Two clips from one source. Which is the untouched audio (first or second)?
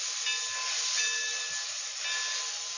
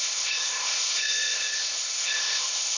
first